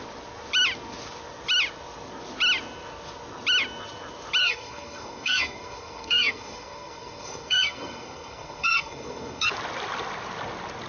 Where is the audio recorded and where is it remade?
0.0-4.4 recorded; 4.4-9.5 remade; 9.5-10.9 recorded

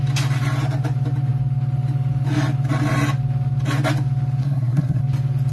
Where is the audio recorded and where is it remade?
0.0-4.4 recorded; 4.4-5.0 remade; 5.0-5.5 recorded

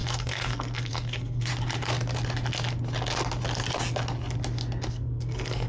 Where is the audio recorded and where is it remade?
0.0-1.5 remade; 1.5-4.9 recorded; 4.9-5.7 remade

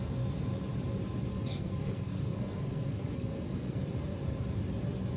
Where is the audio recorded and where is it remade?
0.0-1.3 recorded; 1.3-3.8 remade; 3.8-5.2 recorded

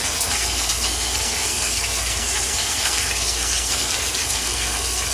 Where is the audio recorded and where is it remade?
0.0-5.1 remade

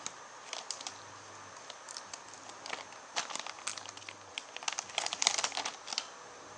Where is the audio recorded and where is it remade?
0.0-6.6 recorded

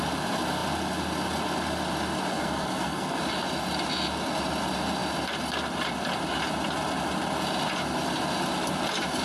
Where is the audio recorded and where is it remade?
0.0-2.3 recorded; 2.3-3.2 remade; 3.2-9.2 recorded